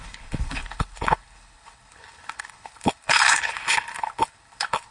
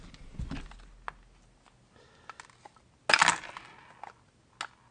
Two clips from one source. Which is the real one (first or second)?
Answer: second